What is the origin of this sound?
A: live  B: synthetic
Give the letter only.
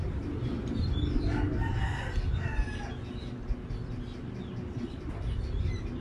A